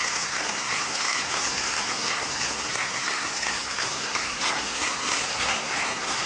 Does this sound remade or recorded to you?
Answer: remade